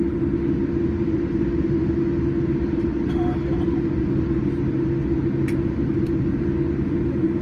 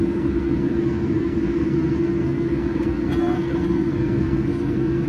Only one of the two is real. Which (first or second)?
first